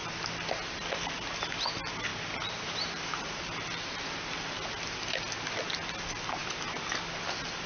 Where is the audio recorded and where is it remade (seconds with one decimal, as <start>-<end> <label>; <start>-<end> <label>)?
0.0-2.1 recorded; 2.1-4.0 remade; 4.0-6.4 recorded; 6.4-7.7 remade